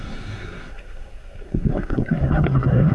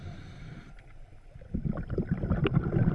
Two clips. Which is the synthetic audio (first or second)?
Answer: first